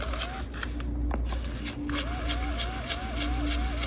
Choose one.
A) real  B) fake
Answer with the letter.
A